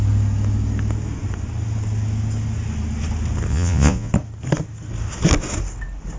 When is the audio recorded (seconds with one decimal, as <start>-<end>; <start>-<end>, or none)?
0.0-3.5; 4.1-6.2